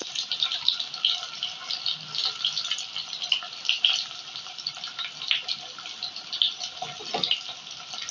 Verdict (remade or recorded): recorded